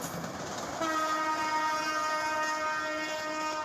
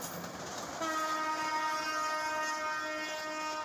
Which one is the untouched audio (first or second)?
second